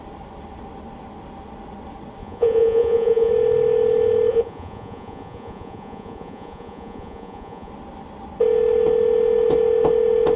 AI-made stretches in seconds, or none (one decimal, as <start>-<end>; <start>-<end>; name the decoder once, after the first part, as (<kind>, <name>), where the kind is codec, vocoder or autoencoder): 2.2-3.3 (vocoder, Vocos); 4.3-7.7